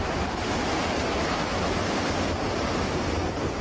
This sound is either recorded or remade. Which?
recorded